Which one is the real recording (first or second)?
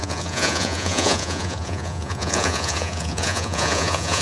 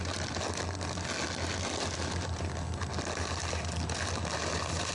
second